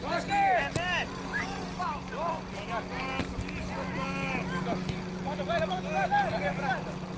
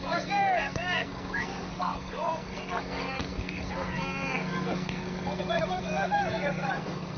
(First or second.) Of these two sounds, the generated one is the second